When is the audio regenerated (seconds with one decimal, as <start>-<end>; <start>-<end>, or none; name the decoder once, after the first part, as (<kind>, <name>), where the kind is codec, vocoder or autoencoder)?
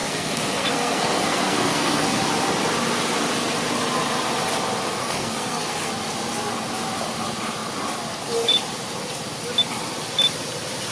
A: 0.0-2.2 (codec, SNAC); 5.0-5.9